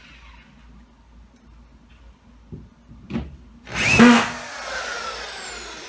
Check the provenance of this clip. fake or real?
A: real